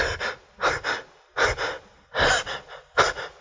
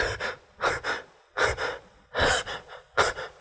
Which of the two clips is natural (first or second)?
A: first